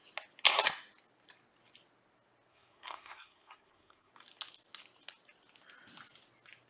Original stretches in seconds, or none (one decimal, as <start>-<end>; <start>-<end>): 0.0-2.5; 4.1-6.7